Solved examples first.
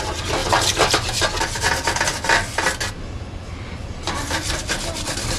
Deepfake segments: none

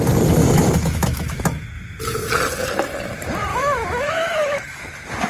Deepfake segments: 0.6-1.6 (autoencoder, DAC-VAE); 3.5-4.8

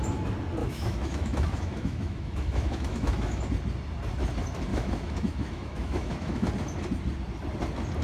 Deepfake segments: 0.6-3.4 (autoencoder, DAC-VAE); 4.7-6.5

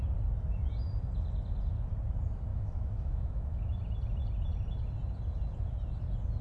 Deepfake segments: 2.5-3.8 (autoencoder, DAC-VAE)